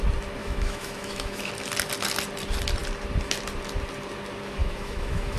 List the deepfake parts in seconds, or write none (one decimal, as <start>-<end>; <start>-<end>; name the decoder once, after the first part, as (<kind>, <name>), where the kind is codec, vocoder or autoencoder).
0.4-1.5 (autoencoder, DAC-VAE); 4.6-5.4